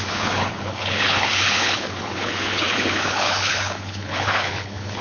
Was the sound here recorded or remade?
remade